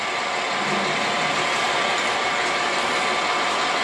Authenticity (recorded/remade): recorded